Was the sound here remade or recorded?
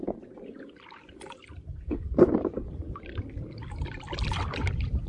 recorded